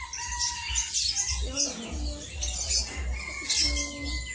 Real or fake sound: real